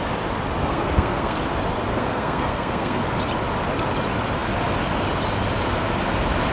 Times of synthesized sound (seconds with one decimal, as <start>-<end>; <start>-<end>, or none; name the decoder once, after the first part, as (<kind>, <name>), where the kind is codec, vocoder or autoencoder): 0.6-1.4 (codec, SNAC); 1.9-3.0